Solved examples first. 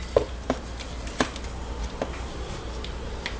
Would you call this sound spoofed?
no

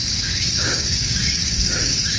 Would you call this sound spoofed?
yes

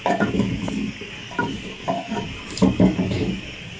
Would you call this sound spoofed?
yes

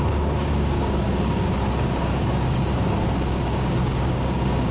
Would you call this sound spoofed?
yes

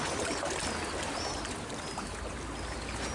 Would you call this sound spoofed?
no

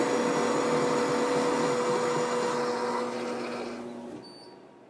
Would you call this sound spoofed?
no